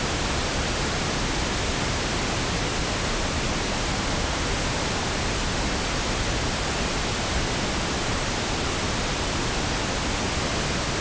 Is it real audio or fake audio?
real